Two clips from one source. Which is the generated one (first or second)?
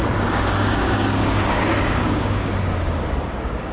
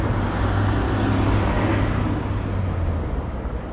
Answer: first